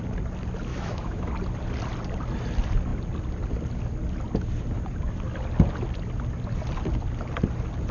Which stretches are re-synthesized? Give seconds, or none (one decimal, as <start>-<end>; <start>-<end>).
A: 0.7-1.3

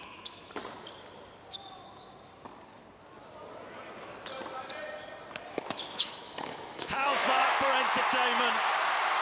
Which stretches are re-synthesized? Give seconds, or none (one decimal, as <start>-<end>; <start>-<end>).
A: 0.0-0.6; 5.5-8.0